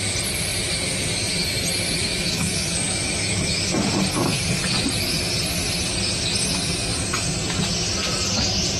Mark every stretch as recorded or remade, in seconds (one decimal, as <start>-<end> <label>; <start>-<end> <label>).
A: 0.0-2.0 recorded; 2.0-3.7 remade; 3.7-8.8 recorded